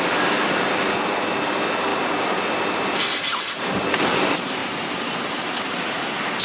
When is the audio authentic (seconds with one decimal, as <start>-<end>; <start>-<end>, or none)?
0.0-1.9; 2.4-3.3; 3.8-4.6; 5.3-6.4